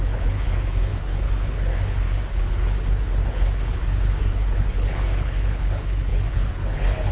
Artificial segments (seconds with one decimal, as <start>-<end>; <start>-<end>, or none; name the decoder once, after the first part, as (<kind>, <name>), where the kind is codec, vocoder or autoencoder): 0.0-7.1 (codec, HILCodec)